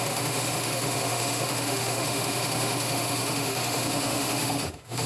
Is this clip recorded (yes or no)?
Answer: no